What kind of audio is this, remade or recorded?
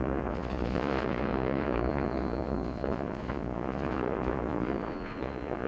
remade